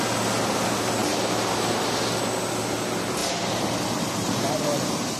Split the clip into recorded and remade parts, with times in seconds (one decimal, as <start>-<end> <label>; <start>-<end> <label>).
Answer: 0.0-3.2 recorded; 3.2-5.2 remade